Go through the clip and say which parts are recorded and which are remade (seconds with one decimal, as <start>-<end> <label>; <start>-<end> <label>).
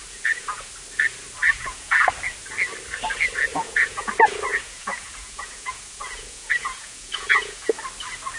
0.0-0.7 remade; 0.7-1.4 recorded; 1.4-2.1 remade; 2.1-3.5 recorded; 3.5-4.1 remade; 4.1-4.5 recorded; 4.5-7.8 remade; 7.8-8.4 recorded